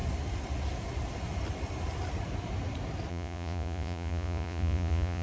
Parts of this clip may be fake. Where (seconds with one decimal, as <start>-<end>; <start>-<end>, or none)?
3.1-5.2